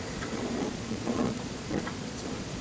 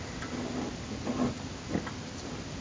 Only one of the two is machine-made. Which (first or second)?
first